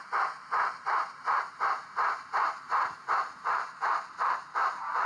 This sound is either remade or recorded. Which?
remade